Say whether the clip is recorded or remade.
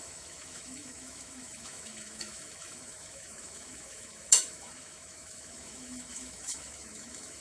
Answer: remade